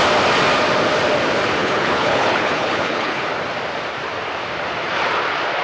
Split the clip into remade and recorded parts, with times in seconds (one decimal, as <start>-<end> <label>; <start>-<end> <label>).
0.0-1.6 recorded; 1.6-3.2 remade; 3.2-5.6 recorded